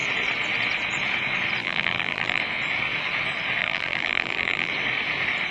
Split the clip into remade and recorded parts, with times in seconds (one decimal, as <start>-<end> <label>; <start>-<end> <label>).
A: 0.0-1.6 recorded; 1.6-2.4 remade; 2.4-3.6 recorded; 3.6-4.7 remade; 4.7-5.5 recorded